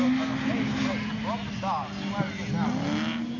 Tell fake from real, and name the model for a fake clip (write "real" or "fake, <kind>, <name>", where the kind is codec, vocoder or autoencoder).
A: real